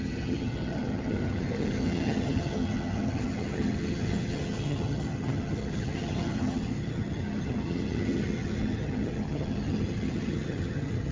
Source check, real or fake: fake